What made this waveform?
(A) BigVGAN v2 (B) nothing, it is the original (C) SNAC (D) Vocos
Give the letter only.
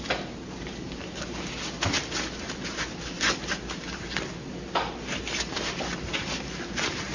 B